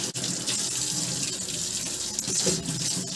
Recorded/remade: recorded